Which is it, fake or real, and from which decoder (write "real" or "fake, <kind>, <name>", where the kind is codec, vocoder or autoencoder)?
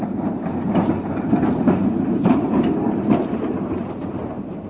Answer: fake, vocoder, BigVGAN v2